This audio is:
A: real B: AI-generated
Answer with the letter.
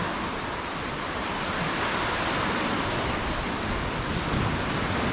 A